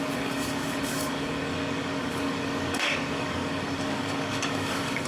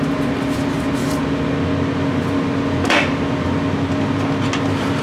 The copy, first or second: first